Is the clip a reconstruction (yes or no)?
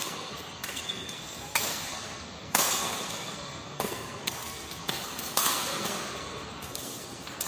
yes